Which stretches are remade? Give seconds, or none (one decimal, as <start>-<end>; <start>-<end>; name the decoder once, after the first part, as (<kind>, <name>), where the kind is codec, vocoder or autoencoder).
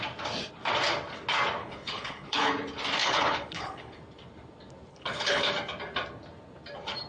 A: 1.6-2.5 (codec, HILCodec); 3.0-4.0; 4.9-5.5